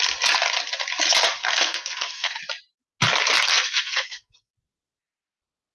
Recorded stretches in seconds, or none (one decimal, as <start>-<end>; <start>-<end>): 0.0-1.4; 2.4-3.5; 4.5-5.7